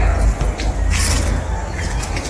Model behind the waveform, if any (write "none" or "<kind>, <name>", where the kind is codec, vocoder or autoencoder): none